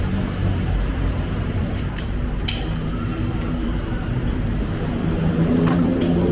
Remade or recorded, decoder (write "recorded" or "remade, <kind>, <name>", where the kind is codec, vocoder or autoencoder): remade, vocoder, BigVGAN v2